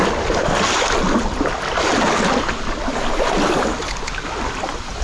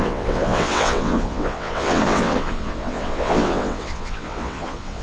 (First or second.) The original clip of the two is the first